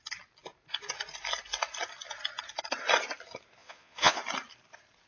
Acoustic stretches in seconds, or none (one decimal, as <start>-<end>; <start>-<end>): 0.0-3.6; 4.2-5.1